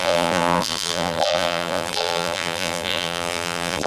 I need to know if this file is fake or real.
fake